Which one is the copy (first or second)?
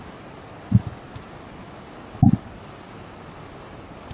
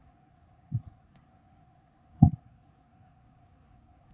second